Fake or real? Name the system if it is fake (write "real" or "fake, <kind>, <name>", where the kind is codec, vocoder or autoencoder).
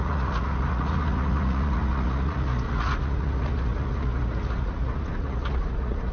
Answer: fake, vocoder, Vocos